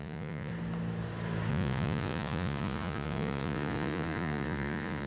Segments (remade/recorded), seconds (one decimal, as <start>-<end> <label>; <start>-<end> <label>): 0.0-0.5 remade; 0.5-1.5 recorded; 1.5-5.1 remade